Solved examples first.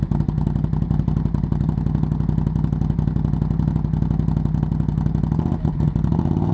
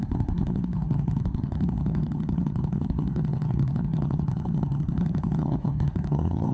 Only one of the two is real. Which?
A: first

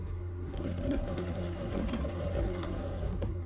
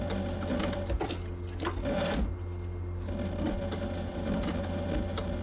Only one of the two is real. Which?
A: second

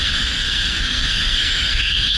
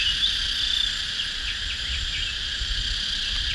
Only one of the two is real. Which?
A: second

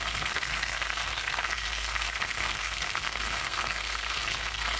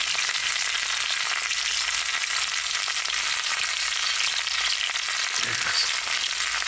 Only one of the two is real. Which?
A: second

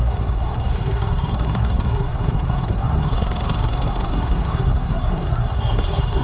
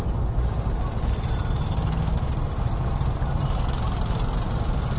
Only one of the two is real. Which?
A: second